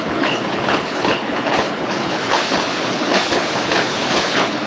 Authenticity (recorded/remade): remade